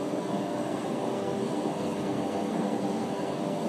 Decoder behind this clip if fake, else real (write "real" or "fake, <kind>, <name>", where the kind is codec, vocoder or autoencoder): fake, codec, SNAC